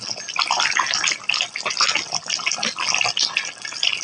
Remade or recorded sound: recorded